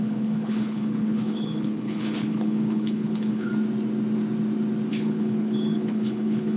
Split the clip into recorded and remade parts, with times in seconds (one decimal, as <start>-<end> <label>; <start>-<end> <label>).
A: 0.0-3.5 remade; 3.5-4.9 recorded; 4.9-6.6 remade